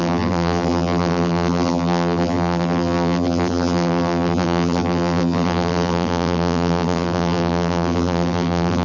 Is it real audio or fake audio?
fake